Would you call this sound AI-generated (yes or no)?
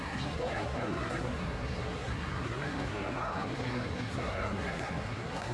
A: yes